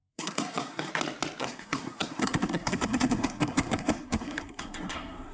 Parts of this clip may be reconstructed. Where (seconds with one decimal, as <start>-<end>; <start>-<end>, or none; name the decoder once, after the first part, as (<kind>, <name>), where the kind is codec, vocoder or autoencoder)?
0.0-0.9 (codec, SNAC); 1.4-5.3